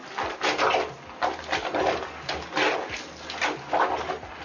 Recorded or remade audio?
recorded